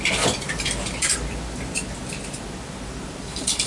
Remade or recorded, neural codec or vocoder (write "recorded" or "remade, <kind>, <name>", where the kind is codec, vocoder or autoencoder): recorded